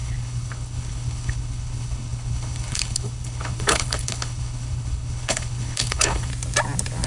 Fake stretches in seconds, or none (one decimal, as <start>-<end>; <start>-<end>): 0.0-6.3